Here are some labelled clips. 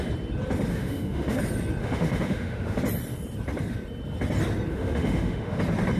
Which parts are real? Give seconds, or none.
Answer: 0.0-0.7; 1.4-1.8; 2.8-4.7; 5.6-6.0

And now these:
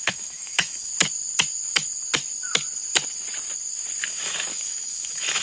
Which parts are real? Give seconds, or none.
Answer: 0.9-4.1

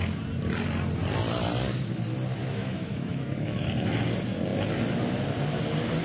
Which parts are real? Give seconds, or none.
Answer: 0.0-2.4; 4.0-6.0

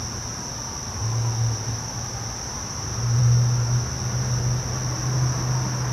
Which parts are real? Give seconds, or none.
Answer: 0.0-5.9

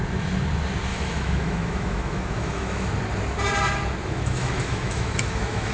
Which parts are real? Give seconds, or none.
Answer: 0.0-0.9; 2.9-4.0